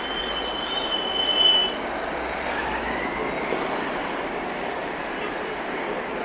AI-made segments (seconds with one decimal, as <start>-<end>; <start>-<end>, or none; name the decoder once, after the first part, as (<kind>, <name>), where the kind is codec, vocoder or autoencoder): 4.8-5.5 (vocoder, BigVGAN v2)